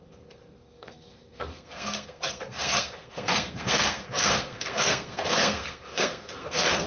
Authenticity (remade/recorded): remade